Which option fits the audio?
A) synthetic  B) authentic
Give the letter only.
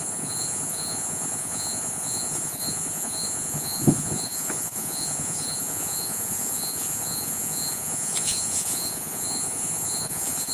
A